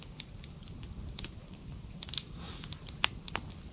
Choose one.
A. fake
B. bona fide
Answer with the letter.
B